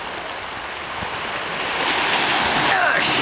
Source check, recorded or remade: recorded